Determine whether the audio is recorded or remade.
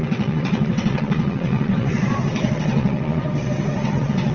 remade